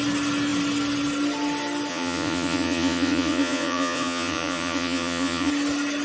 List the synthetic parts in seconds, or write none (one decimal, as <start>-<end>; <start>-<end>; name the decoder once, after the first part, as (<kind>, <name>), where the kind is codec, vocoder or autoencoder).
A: 1.9-5.5 (vocoder, Vocos)